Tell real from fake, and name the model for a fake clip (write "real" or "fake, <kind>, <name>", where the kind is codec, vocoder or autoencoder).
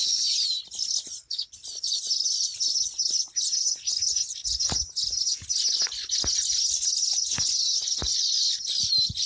real